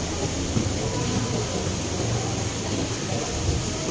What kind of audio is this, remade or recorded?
recorded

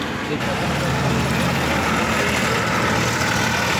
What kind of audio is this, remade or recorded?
recorded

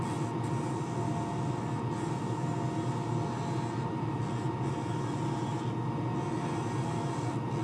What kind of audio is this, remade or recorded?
recorded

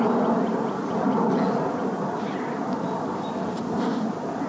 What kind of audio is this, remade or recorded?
recorded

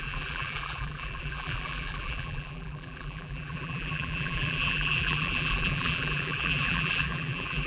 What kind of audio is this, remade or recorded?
remade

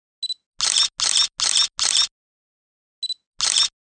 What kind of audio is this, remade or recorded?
recorded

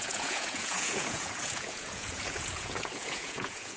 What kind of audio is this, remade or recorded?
remade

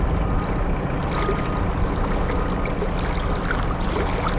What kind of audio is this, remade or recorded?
recorded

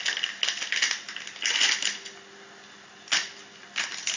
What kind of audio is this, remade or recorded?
recorded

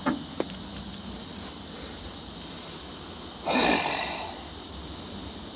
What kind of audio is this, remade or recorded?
recorded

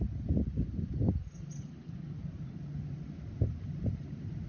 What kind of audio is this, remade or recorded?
recorded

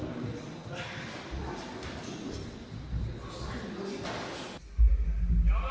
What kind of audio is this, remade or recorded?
recorded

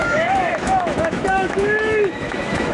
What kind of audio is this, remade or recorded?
remade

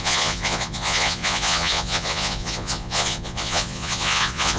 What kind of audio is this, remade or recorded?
remade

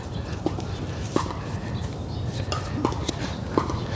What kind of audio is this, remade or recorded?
recorded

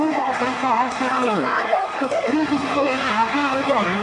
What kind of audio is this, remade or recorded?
remade